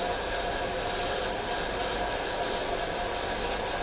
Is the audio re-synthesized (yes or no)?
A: no